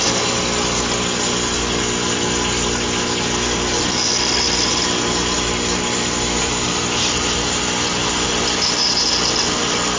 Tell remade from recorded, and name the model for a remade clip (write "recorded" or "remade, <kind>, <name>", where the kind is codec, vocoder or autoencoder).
recorded